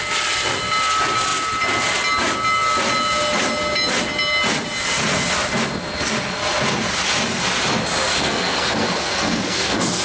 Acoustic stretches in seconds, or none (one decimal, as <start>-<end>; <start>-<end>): 0.0-8.1